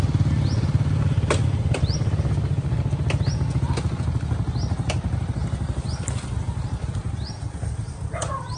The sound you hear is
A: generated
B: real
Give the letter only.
B